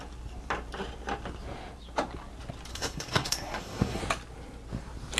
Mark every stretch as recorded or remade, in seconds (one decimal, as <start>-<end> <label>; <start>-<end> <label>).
0.0-2.7 recorded; 2.7-4.0 remade; 4.0-5.2 recorded